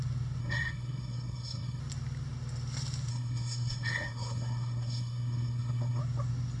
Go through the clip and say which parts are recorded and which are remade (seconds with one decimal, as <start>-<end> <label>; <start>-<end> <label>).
0.0-0.4 recorded; 0.4-1.8 remade; 1.8-3.1 recorded; 3.1-6.0 remade; 6.0-6.6 recorded